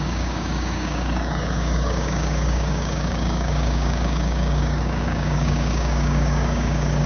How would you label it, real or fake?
fake